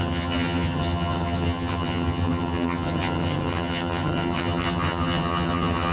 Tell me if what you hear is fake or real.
fake